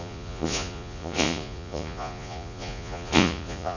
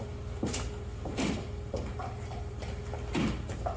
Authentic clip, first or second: second